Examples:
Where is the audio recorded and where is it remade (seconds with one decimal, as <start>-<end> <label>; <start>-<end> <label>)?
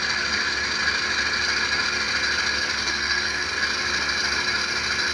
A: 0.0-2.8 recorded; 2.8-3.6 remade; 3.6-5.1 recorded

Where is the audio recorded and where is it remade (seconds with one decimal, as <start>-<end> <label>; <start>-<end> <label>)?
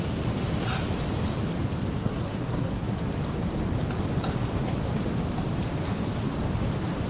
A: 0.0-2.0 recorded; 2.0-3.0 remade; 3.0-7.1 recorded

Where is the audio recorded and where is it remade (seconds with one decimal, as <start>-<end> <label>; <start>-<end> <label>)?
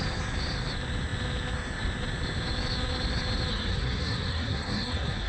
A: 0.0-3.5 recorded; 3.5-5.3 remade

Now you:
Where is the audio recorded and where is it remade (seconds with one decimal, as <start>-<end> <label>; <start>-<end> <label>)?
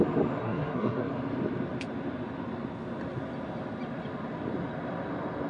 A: 0.0-0.4 recorded; 0.4-1.1 remade; 1.1-5.5 recorded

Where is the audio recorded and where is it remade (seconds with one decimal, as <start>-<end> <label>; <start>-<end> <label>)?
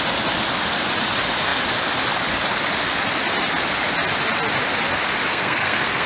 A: 0.0-5.3 recorded; 5.3-6.1 remade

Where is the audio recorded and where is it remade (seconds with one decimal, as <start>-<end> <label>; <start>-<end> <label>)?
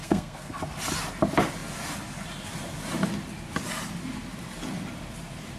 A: 0.0-0.6 remade; 0.6-5.6 recorded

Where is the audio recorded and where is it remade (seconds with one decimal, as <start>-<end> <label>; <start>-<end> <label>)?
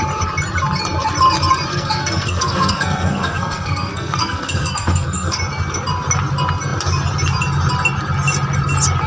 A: 0.0-1.7 recorded; 1.7-5.4 remade; 5.4-9.1 recorded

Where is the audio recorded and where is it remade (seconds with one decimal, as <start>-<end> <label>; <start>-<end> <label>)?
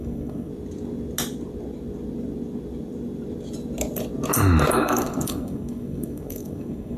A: 0.0-0.5 remade; 0.5-4.7 recorded; 4.7-7.0 remade